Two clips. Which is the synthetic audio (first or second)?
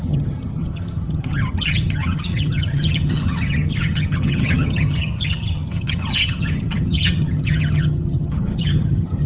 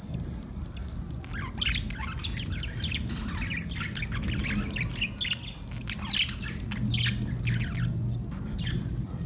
first